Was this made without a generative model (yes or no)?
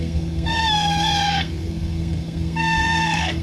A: no